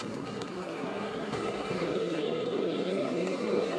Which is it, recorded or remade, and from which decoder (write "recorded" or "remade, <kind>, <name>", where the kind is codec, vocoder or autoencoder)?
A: remade, codec, SNAC